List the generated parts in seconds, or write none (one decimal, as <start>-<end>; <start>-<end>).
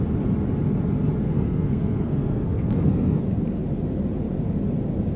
1.2-3.2